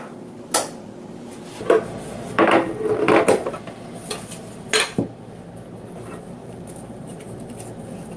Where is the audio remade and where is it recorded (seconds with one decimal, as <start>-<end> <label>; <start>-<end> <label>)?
0.0-6.4 recorded; 6.4-7.2 remade; 7.2-8.2 recorded